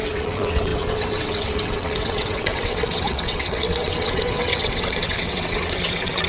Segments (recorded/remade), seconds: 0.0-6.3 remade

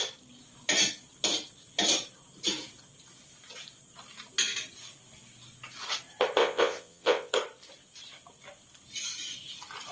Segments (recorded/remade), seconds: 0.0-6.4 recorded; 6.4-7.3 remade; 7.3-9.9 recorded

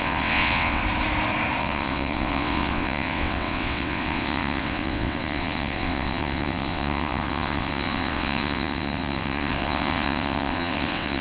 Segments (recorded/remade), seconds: 0.0-0.8 remade; 0.8-1.6 recorded; 1.6-11.2 remade

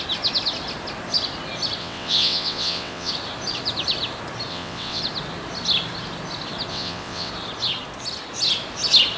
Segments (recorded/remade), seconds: 0.0-1.8 recorded; 1.8-3.1 remade; 3.1-4.5 recorded; 4.5-5.0 remade; 5.0-6.7 recorded; 6.7-7.3 remade; 7.3-9.2 recorded

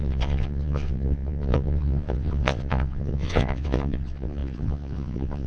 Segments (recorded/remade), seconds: 0.0-5.5 remade

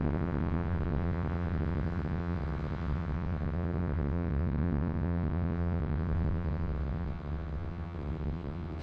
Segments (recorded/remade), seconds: 0.0-8.8 remade

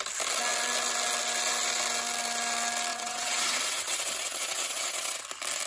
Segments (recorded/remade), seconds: 0.0-2.9 recorded; 2.9-5.2 remade; 5.2-5.7 recorded

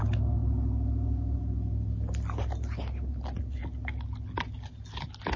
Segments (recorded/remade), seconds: 0.0-5.4 recorded